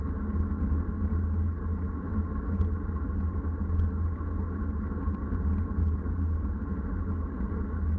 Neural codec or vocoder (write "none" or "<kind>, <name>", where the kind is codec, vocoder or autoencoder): none